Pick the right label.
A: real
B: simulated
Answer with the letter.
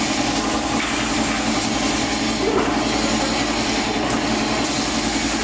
A